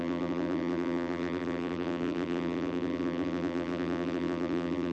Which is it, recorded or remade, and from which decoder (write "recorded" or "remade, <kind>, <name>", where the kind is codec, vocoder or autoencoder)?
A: remade, vocoder, BigVGAN v2